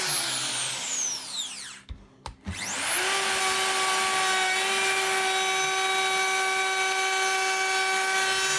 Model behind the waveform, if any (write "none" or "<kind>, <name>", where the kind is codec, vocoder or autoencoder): none